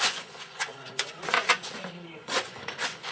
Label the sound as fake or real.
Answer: fake